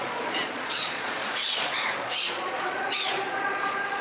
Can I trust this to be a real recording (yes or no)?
no